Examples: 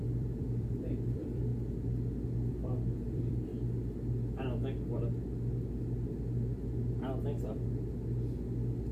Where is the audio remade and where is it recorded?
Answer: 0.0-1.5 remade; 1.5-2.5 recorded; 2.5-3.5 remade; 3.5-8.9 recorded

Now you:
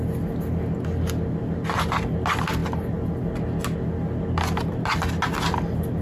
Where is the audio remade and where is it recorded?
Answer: 0.0-6.0 recorded